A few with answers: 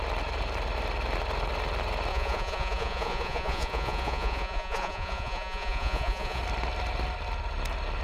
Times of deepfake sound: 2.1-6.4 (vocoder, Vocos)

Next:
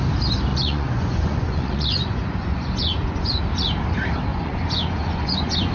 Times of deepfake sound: 0.5-3.4 (vocoder, Vocos); 4.3-5.7

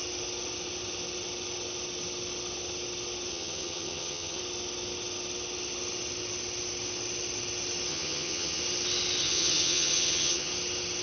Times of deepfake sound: 3.3-4.4 (vocoder, HiFi-GAN); 7.9-8.6; 9.2-10.5

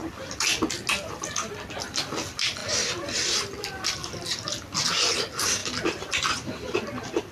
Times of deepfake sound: 2.6-3.4 (vocoder, BigVGAN v2); 4.0-4.9; 5.6-7.3

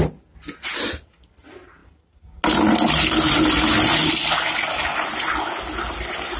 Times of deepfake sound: none

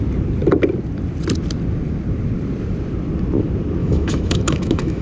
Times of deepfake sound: 3.8-5.0 (autoencoder, DAC-VAE)